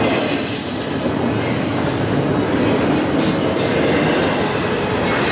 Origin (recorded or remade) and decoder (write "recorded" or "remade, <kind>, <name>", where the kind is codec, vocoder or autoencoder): recorded